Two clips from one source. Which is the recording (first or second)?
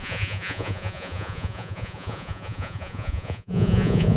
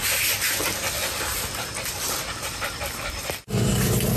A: second